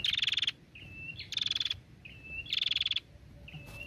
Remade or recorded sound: recorded